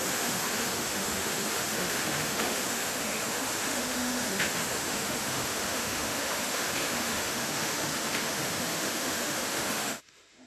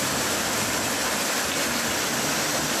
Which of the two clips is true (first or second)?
second